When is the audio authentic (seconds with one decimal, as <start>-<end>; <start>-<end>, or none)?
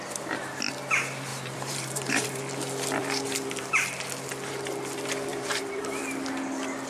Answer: 0.0-1.3; 2.4-3.0; 3.7-5.3; 6.0-6.9